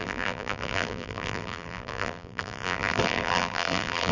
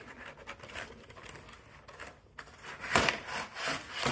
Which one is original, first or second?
second